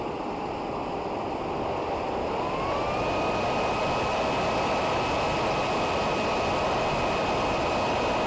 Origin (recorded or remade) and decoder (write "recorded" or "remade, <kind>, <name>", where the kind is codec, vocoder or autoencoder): recorded